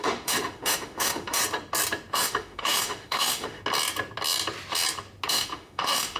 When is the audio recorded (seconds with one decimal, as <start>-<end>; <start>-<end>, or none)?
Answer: 1.4-2.1; 3.6-5.3